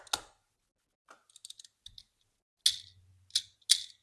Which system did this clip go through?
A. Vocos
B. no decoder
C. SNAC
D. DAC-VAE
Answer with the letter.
B